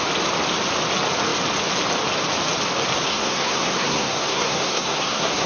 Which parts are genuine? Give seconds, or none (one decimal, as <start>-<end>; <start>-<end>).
0.0-3.1